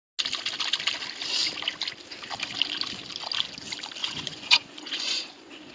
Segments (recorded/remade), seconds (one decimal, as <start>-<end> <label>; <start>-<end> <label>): 0.0-4.0 recorded; 4.0-5.7 remade